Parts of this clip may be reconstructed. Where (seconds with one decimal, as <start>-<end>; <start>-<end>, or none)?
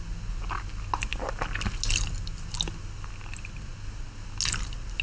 none